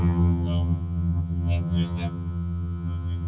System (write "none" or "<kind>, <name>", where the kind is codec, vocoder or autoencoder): vocoder, HiFi-GAN